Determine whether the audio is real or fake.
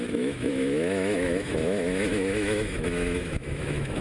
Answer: fake